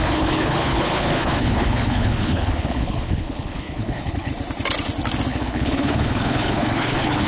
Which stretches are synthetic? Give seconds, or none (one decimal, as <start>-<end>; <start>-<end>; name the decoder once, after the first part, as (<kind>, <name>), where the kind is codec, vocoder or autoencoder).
0.0-4.3 (codec, HILCodec); 5.3-7.3